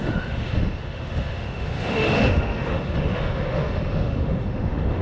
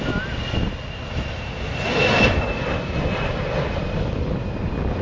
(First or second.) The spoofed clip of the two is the first